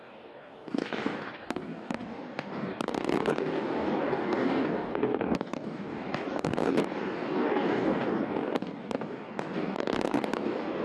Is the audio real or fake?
fake